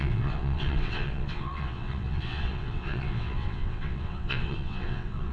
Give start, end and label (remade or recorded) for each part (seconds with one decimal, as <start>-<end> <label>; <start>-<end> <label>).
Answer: 0.0-5.3 remade